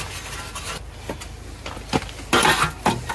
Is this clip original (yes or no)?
yes